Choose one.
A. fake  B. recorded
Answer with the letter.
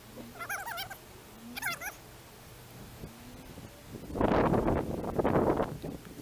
B